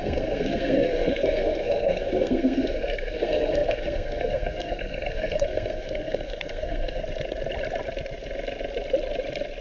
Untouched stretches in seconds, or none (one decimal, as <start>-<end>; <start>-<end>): 7.0-9.6